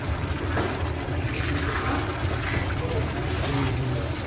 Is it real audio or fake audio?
real